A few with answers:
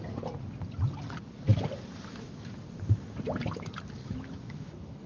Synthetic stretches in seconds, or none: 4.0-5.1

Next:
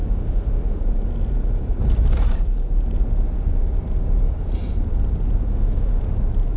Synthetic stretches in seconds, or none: 0.0-0.8; 5.5-6.0

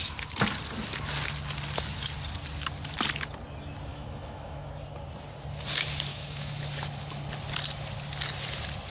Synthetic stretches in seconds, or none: 3.9-4.7; 6.1-6.6

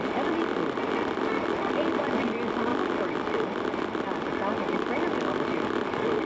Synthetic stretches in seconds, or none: none

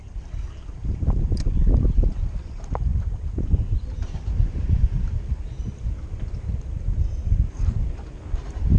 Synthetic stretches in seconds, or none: none

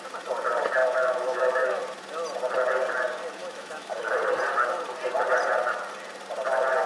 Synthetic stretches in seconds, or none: 0.8-1.8; 3.4-4.2